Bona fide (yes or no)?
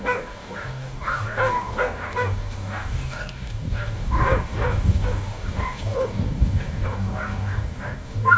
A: no